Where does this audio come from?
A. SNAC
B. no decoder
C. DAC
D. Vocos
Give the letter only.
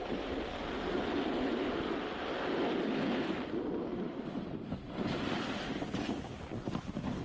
B